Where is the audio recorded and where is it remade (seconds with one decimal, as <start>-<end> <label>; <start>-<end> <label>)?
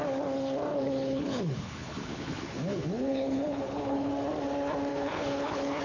0.0-0.7 recorded; 0.7-4.1 remade; 4.1-4.9 recorded; 4.9-5.8 remade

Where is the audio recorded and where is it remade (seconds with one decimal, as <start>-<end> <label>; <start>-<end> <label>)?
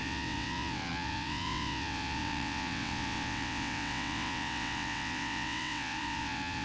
0.0-6.6 remade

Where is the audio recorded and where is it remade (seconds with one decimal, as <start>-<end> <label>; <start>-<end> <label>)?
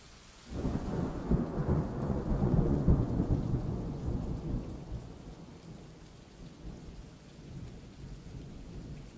0.0-5.5 remade; 5.5-6.1 recorded; 6.1-9.2 remade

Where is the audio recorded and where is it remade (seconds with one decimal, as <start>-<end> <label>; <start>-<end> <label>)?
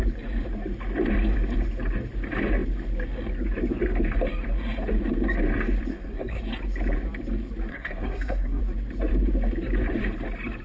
0.0-5.9 recorded; 5.9-6.4 remade; 6.4-7.7 recorded; 7.7-8.6 remade; 8.6-10.6 recorded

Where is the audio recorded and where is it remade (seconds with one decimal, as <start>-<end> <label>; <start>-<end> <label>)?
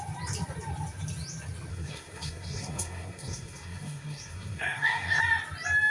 0.0-1.7 recorded; 1.7-5.2 remade; 5.2-5.9 recorded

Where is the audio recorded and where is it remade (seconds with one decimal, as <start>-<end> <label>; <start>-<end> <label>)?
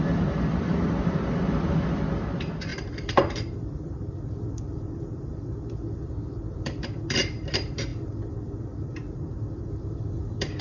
0.0-7.9 remade; 7.9-9.1 recorded; 9.1-10.6 remade